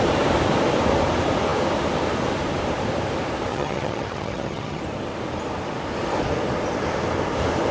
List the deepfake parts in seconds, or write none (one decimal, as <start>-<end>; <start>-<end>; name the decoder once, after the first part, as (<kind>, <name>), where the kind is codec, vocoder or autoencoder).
3.5-4.8 (vocoder, HiFi-GAN)